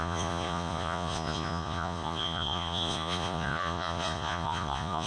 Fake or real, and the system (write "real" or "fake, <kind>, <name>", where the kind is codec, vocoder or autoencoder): fake, vocoder, Vocos